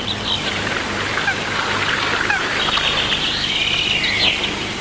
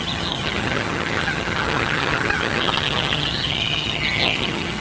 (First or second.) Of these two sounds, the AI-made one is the second